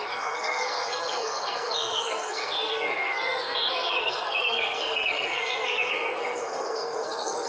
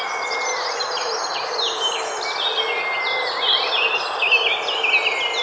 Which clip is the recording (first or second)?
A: second